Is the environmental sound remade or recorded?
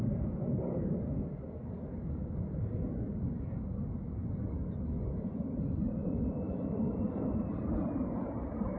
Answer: remade